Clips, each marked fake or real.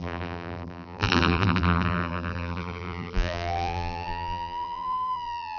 fake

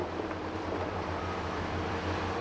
fake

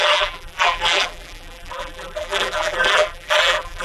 fake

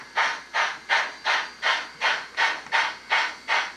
real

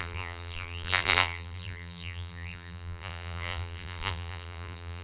fake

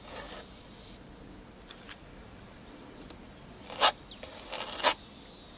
real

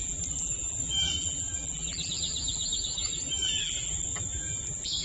fake